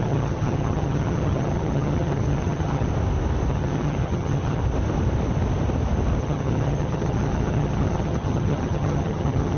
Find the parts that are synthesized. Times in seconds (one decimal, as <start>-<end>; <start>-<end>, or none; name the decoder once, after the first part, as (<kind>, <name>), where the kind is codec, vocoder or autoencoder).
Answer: 0.0-2.9 (vocoder, HiFi-GAN); 3.5-4.6; 6.2-9.6